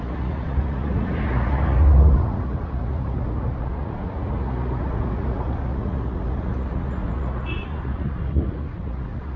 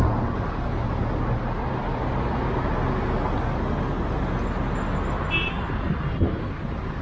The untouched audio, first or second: second